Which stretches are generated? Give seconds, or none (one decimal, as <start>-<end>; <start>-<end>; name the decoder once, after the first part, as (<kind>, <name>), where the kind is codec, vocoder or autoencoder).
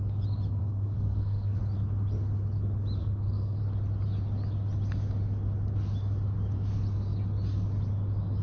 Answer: 0.6-1.6 (codec, SNAC); 3.0-3.6